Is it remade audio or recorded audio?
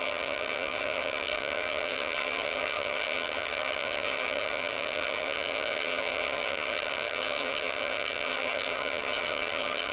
remade